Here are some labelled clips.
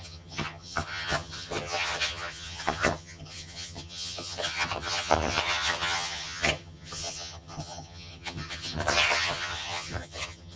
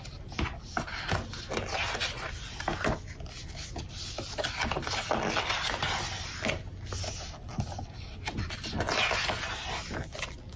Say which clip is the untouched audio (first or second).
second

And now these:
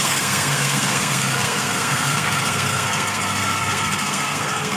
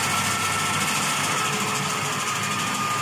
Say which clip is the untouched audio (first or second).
second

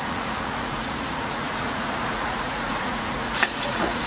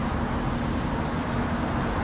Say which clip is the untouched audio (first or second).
second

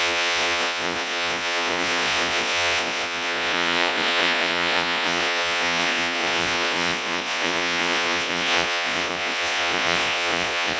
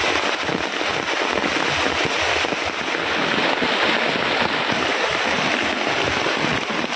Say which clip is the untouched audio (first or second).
second